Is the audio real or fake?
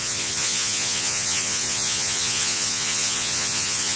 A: fake